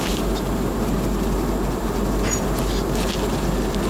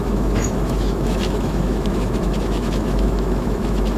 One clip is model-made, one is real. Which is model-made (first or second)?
second